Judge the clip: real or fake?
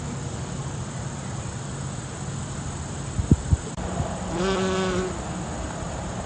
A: real